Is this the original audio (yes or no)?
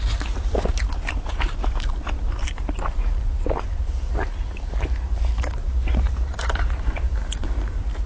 no